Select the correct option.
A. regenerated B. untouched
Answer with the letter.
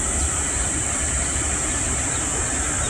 B